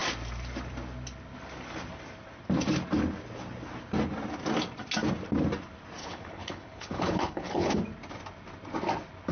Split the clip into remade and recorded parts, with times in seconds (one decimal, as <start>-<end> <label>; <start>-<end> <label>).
0.0-6.0 recorded; 6.0-7.7 remade; 7.7-9.3 recorded